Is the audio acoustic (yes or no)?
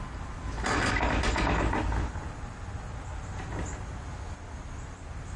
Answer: yes